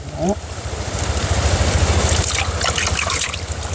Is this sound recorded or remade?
recorded